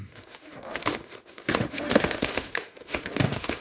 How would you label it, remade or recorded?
remade